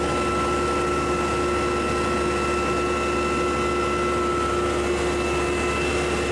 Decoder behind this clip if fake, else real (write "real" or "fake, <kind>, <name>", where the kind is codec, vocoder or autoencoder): real